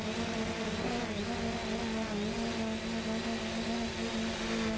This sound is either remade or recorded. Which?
recorded